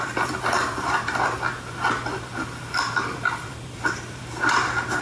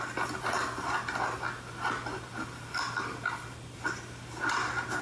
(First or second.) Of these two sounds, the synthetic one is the first